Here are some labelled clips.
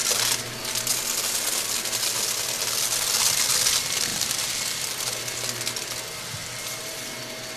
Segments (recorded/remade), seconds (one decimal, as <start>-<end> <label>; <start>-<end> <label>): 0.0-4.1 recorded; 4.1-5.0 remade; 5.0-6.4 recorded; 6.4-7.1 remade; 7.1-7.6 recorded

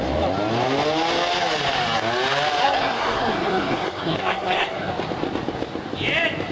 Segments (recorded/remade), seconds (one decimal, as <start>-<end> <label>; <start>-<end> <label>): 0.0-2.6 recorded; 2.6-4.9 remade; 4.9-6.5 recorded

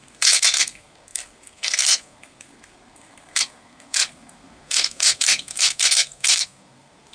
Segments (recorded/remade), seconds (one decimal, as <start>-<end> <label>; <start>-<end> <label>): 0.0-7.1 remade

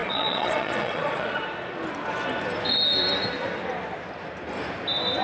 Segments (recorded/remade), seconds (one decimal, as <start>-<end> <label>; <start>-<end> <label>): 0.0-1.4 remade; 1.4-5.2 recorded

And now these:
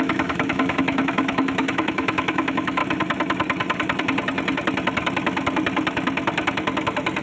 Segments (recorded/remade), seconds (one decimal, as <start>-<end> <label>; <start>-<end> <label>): 0.0-2.8 remade; 2.8-7.2 recorded

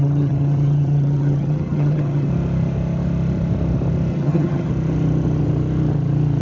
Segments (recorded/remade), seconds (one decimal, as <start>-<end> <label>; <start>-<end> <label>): 0.0-2.3 remade; 2.3-4.1 recorded; 4.1-4.7 remade; 4.7-6.4 recorded

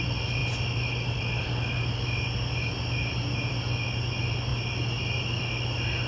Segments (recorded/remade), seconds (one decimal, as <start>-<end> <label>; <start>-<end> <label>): 0.0-6.1 recorded

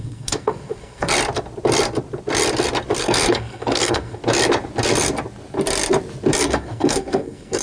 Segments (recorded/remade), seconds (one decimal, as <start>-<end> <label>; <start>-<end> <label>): 0.0-1.1 remade; 1.1-3.0 recorded; 3.0-4.2 remade; 4.2-6.4 recorded; 6.4-7.6 remade